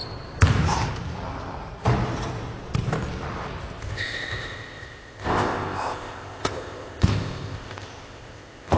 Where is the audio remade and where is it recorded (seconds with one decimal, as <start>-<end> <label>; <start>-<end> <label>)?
0.0-3.8 recorded; 3.8-8.8 remade

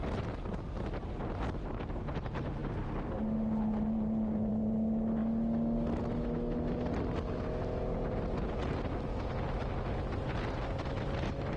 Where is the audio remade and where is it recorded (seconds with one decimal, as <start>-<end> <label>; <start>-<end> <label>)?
0.0-11.6 recorded